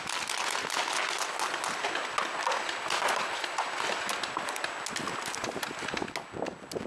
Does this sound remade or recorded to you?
recorded